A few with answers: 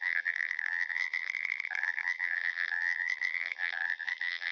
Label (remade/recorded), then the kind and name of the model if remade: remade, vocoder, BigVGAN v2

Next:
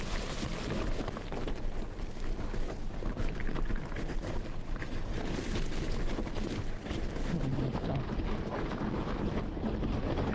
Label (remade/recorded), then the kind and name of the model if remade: recorded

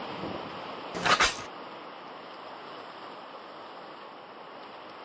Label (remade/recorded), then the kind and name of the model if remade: recorded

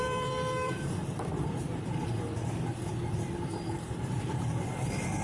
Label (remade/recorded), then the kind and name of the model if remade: remade, vocoder, BigVGAN v2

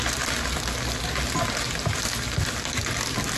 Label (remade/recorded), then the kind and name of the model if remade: recorded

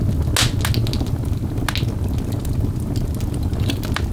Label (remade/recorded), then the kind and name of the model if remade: recorded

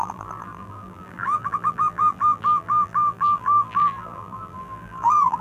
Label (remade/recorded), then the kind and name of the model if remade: remade, vocoder, BigVGAN v2